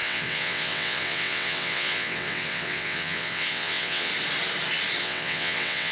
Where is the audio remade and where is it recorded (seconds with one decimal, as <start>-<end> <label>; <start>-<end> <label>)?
0.0-4.1 remade; 4.1-5.0 recorded; 5.0-5.9 remade